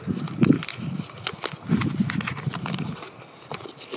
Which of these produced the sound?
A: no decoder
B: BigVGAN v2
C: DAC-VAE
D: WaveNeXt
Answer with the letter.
A